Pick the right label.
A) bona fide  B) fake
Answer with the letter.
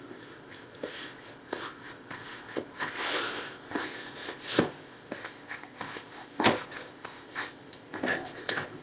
B